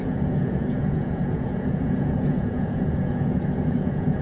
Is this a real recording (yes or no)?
no